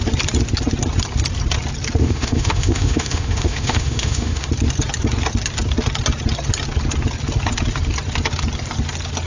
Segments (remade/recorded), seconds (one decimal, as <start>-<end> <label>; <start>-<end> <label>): 0.0-2.0 recorded; 2.0-4.5 remade; 4.5-9.3 recorded